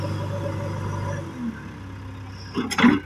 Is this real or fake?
real